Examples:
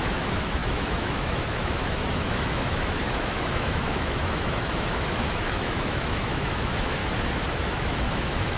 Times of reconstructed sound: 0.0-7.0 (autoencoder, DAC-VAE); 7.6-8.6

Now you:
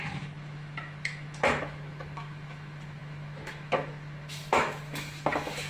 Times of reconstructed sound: 0.0-5.7 (autoencoder, DAC-VAE)

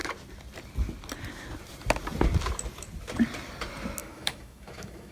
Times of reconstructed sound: 4.0-5.1 (autoencoder, DAC-VAE)